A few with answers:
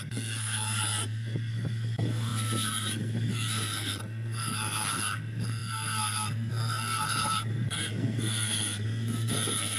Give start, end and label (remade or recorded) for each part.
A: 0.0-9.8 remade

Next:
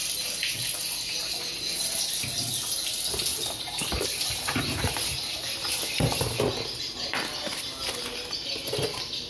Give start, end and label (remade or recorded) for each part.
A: 0.0-3.3 recorded; 3.3-4.5 remade; 4.5-9.3 recorded

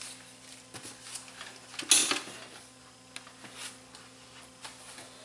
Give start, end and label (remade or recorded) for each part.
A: 0.0-5.2 recorded

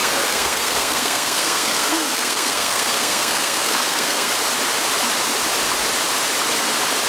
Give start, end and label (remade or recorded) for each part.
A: 0.0-4.3 remade; 4.3-7.1 recorded